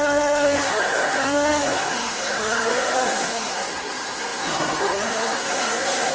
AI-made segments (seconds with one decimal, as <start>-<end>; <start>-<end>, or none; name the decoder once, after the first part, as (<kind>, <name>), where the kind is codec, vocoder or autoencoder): 0.0-6.1 (codec, SNAC)